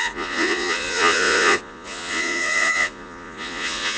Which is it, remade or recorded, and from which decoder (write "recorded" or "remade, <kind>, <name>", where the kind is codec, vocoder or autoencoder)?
remade, vocoder, Vocos